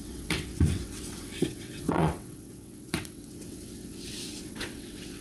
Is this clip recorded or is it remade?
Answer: remade